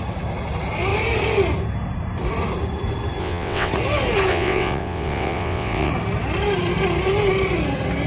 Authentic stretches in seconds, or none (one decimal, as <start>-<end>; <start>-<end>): 0.0-3.2; 3.7-4.3; 5.9-8.1